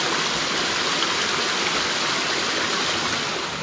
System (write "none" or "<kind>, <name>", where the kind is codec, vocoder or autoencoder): none